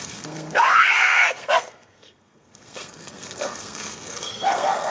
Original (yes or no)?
no